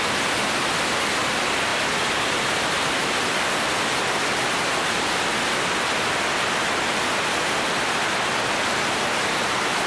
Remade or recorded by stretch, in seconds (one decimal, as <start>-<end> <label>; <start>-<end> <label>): 0.0-1.7 recorded; 1.7-3.0 remade; 3.0-9.9 recorded